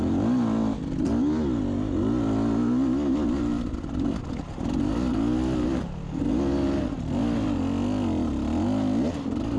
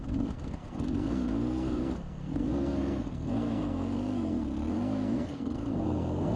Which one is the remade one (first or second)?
second